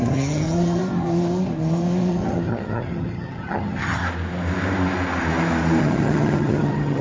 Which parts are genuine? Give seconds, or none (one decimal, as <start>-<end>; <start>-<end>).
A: 0.8-2.1; 4.0-5.8

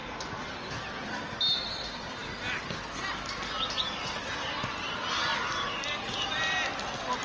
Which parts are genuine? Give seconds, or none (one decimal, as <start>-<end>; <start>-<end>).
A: 0.0-7.2

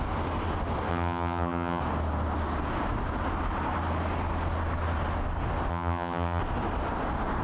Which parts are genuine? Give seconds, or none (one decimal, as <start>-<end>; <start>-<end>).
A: 0.0-0.9; 1.8-5.7; 6.4-7.4